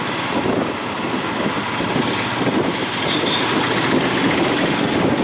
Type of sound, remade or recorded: recorded